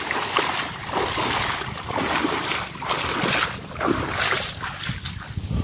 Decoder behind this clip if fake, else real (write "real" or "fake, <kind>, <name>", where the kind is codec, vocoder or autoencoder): real